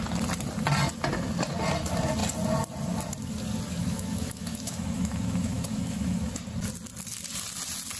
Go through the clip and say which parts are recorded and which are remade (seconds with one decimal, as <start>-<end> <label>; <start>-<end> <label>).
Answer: 0.0-3.8 recorded; 3.8-6.3 remade; 6.3-8.0 recorded